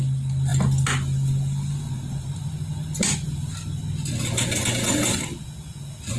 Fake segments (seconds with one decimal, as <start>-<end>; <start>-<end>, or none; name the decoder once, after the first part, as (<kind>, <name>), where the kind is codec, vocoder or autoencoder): none